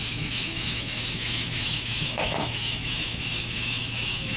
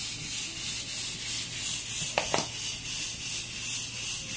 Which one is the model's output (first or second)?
first